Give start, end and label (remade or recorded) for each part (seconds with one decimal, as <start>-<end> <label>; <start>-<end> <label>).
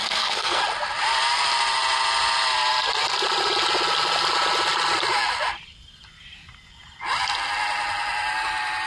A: 0.0-0.6 remade; 0.6-8.9 recorded